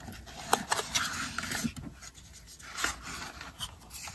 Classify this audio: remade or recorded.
recorded